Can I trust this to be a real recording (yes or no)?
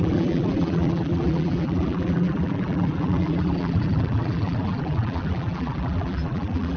no